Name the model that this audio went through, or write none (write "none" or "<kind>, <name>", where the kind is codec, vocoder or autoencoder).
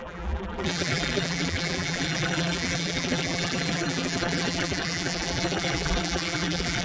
vocoder, BigVGAN v2